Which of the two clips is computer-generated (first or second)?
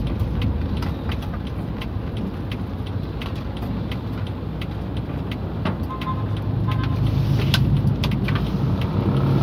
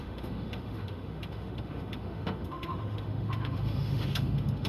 second